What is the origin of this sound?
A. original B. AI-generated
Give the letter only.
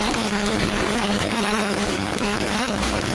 B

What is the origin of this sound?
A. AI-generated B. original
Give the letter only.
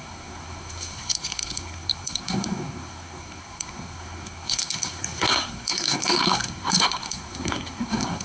A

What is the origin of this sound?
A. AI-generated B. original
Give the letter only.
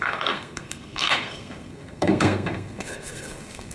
A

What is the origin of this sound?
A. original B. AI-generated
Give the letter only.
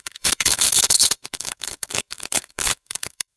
B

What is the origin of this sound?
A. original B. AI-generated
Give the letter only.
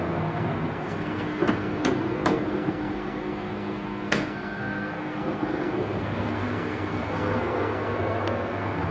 B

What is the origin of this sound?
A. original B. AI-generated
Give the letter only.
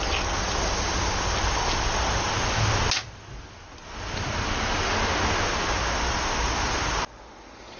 A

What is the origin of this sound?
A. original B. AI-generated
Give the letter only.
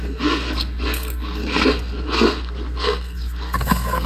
B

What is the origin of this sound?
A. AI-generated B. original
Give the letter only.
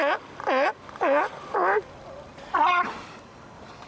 B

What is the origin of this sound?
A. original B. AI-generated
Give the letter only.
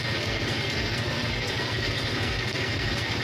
B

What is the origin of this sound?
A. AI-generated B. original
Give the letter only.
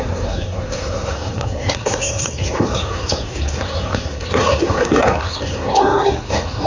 A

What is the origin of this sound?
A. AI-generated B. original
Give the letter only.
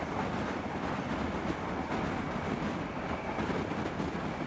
B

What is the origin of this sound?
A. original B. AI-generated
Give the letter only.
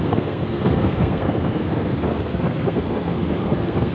B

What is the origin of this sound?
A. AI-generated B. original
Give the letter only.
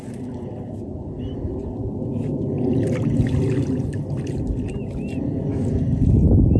B